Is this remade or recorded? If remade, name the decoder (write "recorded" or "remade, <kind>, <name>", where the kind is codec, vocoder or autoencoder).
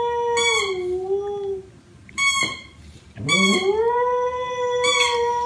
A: recorded